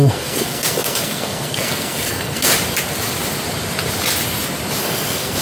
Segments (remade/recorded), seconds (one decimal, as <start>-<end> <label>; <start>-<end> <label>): 0.0-2.5 remade; 2.5-4.8 recorded; 4.8-5.4 remade